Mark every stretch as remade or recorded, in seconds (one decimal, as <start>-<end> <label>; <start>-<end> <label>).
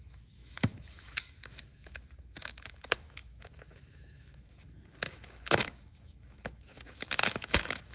0.0-7.9 remade